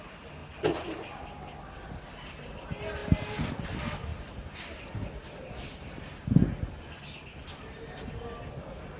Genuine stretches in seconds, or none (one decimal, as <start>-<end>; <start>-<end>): 0.0-9.0